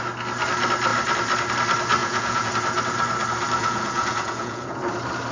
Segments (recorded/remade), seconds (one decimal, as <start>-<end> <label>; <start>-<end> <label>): 0.0-2.0 recorded; 2.0-2.5 remade; 2.5-3.6 recorded; 3.6-4.8 remade; 4.8-5.3 recorded